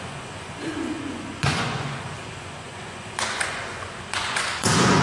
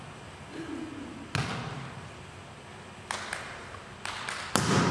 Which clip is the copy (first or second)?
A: first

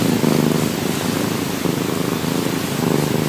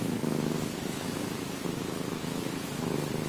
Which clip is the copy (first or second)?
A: second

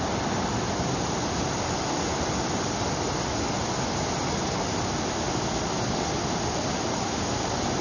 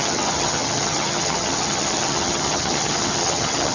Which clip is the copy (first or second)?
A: second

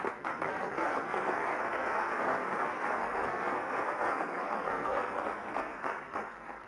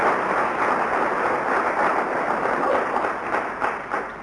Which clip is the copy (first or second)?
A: first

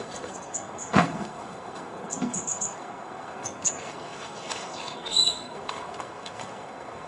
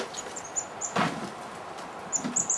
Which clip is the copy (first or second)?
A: first